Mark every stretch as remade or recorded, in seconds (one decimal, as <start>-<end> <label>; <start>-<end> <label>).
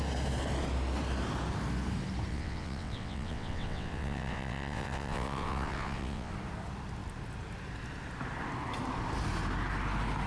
0.0-2.3 recorded; 2.3-6.3 remade; 6.3-10.3 recorded